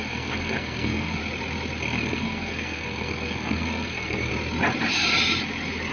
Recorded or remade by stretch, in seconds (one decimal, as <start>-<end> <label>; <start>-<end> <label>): 0.0-1.2 remade; 1.2-1.8 recorded; 1.8-4.3 remade; 4.3-5.9 recorded